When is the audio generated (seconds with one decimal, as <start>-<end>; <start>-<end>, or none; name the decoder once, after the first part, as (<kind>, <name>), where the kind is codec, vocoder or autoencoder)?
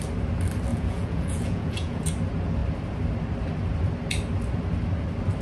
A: 0.7-2.0 (vocoder, Vocos)